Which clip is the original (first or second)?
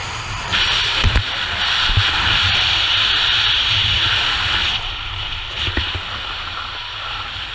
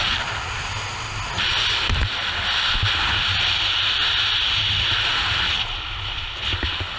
second